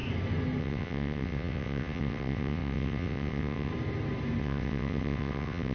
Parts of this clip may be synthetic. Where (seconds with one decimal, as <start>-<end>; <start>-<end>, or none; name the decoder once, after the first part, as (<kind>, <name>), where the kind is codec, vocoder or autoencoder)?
0.6-3.7 (vocoder, WaveNeXt); 4.4-5.7